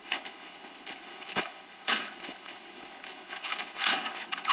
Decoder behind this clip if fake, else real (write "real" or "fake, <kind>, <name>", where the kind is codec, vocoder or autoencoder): fake, codec, HILCodec